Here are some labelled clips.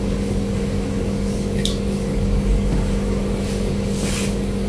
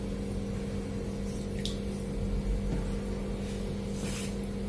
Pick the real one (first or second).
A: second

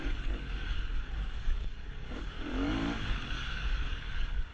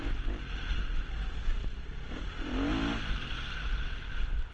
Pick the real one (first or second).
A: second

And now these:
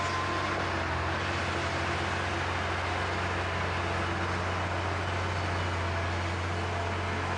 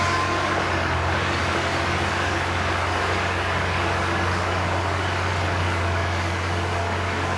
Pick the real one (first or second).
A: first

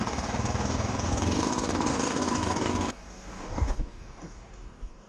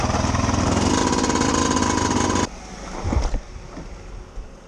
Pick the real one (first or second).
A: second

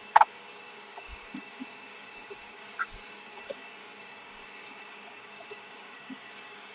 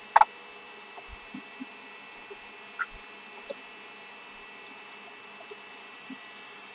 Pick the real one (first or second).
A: second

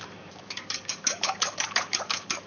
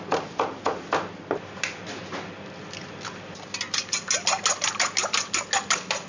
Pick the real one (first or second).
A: second